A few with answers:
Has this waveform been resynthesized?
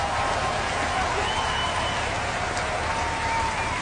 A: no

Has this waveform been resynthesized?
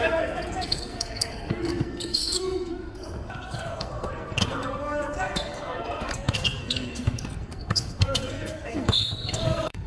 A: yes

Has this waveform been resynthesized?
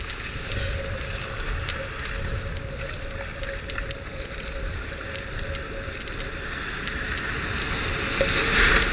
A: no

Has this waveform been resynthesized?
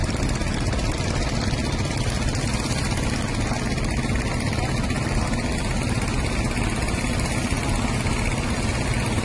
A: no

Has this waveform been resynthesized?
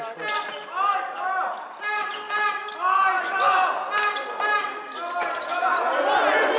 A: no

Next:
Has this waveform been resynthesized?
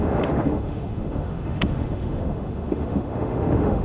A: yes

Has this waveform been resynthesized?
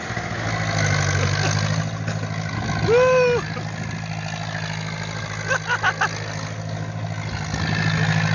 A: no